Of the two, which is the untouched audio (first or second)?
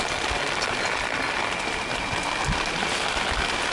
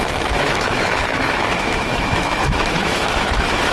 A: first